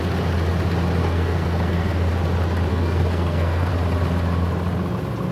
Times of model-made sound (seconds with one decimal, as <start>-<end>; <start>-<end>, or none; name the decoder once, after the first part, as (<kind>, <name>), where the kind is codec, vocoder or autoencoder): 1.0-2.1 (codec, SNAC); 2.7-3.7